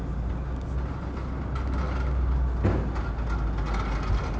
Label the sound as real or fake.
real